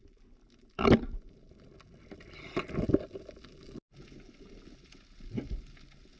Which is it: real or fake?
real